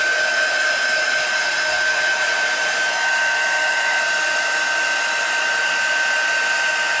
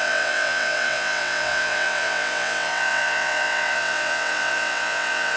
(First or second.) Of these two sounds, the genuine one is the first